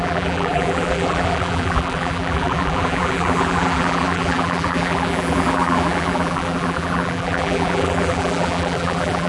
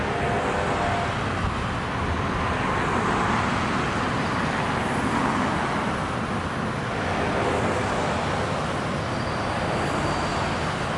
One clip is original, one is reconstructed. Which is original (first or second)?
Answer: second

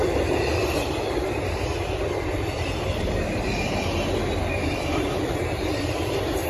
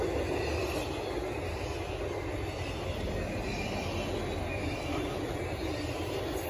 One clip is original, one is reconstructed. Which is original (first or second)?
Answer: second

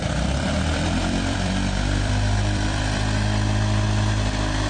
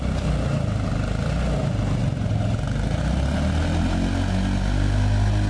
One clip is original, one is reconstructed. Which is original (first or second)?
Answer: second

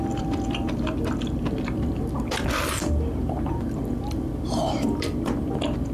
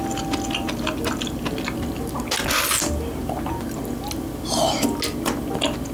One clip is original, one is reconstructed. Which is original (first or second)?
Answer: second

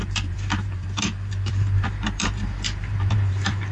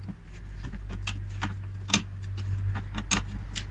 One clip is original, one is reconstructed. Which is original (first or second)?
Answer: second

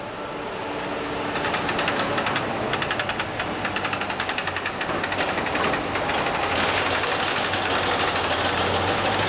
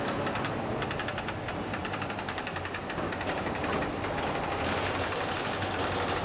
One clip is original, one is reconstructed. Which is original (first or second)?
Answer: first